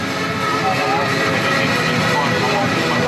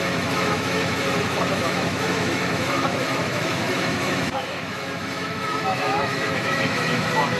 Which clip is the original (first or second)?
first